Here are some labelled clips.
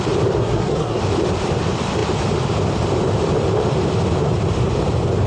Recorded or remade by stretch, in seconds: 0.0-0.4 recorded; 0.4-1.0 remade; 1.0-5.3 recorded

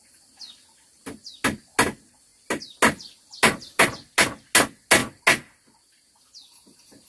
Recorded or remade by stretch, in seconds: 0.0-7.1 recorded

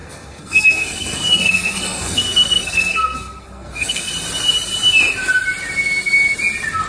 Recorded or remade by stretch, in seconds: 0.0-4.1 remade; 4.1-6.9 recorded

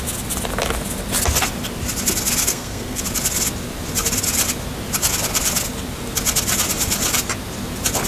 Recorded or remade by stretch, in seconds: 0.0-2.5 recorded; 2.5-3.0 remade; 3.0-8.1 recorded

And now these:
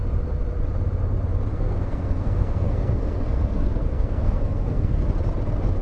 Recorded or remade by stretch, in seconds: 0.0-1.5 recorded; 1.5-5.0 remade; 5.0-5.8 recorded

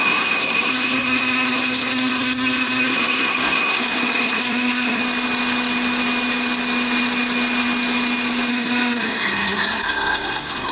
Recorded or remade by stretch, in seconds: 0.0-5.0 remade; 5.0-8.5 recorded; 8.5-10.7 remade

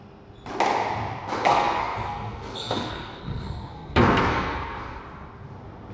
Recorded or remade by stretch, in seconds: 0.0-1.5 recorded; 1.5-5.0 remade; 5.0-5.9 recorded

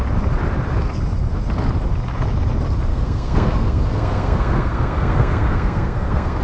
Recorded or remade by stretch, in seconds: 0.0-2.9 recorded; 2.9-6.4 remade